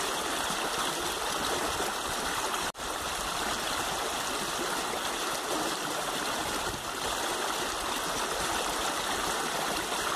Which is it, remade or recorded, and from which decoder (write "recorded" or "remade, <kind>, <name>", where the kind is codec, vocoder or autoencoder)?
recorded